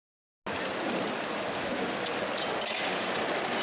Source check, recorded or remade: recorded